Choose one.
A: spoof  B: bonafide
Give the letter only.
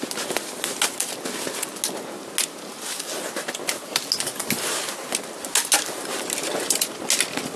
B